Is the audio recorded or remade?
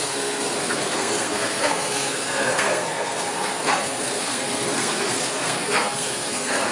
remade